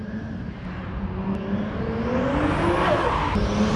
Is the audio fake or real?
real